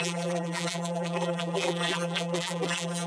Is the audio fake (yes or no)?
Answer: yes